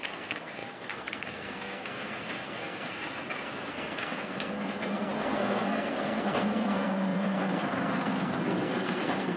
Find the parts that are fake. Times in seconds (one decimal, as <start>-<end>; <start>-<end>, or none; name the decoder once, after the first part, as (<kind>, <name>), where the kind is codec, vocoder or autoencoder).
0.0-9.4 (codec, SNAC)